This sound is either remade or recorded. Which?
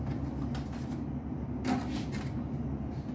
recorded